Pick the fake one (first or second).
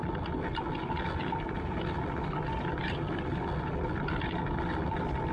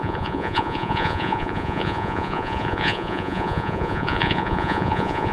second